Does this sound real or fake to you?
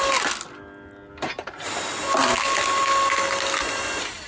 real